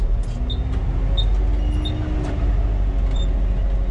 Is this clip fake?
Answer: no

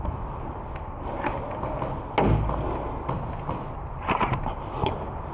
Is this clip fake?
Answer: no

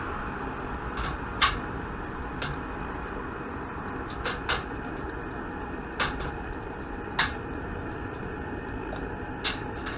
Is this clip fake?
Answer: no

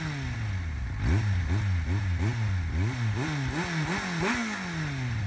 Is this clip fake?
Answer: no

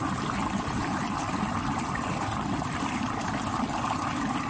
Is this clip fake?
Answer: no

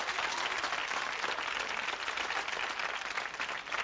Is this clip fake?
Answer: no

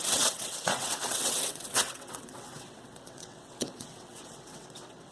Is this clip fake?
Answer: yes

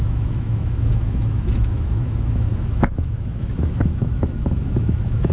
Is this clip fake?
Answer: yes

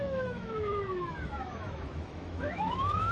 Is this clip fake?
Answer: yes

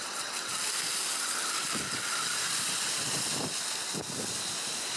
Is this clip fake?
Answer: no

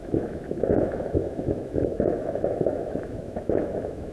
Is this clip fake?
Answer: yes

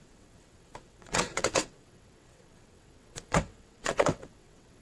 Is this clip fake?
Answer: yes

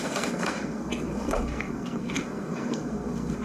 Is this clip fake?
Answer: yes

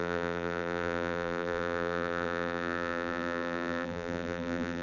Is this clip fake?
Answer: yes